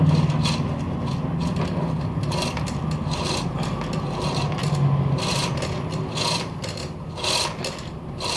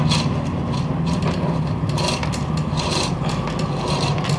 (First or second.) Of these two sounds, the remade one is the second